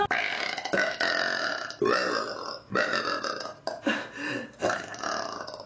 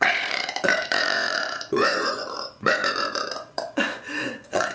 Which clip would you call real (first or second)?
first